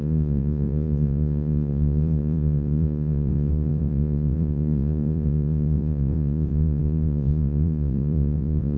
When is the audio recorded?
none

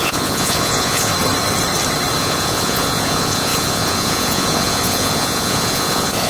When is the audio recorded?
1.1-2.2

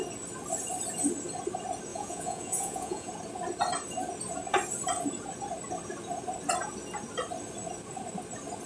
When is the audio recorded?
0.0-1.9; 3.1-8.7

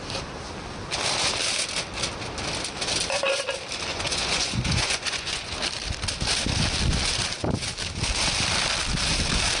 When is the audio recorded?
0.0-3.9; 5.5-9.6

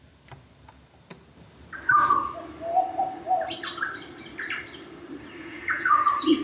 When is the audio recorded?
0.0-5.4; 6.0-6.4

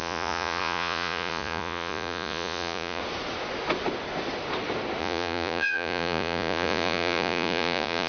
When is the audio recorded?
3.0-5.0

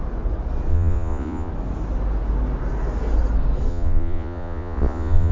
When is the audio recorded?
0.0-0.7; 1.5-3.7